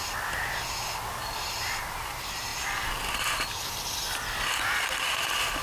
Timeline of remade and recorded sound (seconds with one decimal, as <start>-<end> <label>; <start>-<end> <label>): 0.0-5.6 recorded